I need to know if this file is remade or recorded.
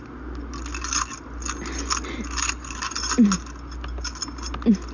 recorded